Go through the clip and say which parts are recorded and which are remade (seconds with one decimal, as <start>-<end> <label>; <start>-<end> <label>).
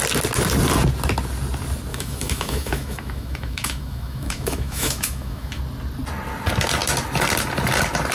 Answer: 0.0-1.9 recorded; 1.9-5.6 remade; 5.6-8.1 recorded